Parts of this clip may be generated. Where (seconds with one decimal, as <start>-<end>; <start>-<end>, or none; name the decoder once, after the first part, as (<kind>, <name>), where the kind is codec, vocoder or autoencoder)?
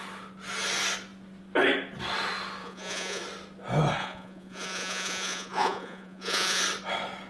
2.6-3.2 (vocoder, Vocos); 4.0-6.6